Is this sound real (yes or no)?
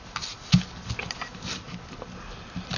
yes